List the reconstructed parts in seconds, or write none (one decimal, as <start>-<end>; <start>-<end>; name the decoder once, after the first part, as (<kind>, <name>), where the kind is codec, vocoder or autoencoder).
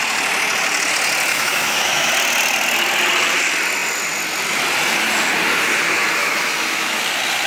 1.3-2.1 (autoencoder, DAC-VAE); 6.2-7.0